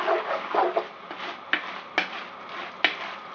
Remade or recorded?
recorded